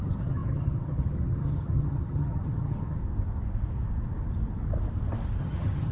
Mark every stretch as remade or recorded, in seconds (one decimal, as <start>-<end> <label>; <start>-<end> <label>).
0.0-3.0 remade; 3.0-5.4 recorded; 5.4-5.9 remade